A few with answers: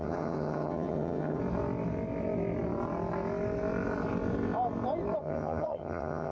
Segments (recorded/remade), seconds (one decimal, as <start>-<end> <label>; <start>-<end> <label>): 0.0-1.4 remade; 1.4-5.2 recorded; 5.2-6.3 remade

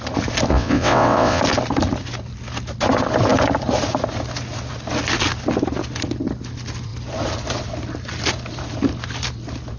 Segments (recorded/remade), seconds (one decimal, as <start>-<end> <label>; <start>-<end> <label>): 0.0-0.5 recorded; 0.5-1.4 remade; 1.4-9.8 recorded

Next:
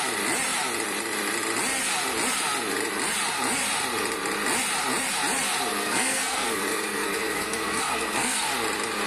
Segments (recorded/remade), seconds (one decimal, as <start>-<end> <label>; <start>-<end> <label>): 0.0-5.8 recorded; 5.8-8.5 remade; 8.5-9.1 recorded

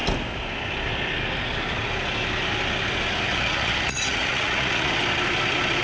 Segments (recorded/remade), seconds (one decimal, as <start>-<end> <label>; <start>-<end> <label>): 0.0-3.3 recorded; 3.3-4.9 remade; 4.9-5.8 recorded

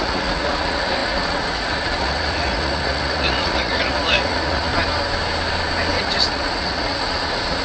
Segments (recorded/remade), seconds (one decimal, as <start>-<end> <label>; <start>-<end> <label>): 0.0-4.7 remade; 4.7-6.0 recorded; 6.0-7.6 remade

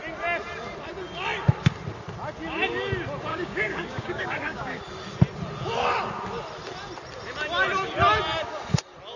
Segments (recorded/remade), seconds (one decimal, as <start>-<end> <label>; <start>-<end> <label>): 0.0-3.3 recorded; 3.3-4.8 remade; 4.8-9.2 recorded